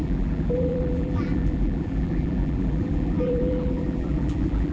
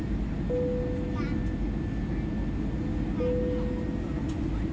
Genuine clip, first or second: second